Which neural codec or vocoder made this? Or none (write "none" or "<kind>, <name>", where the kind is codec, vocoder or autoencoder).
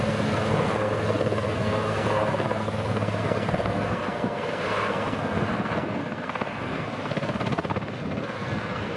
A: codec, SNAC